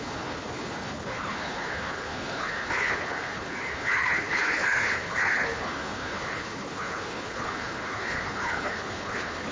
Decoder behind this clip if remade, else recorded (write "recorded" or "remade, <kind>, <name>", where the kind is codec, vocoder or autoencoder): remade, codec, HILCodec